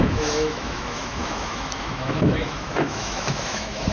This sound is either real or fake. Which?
fake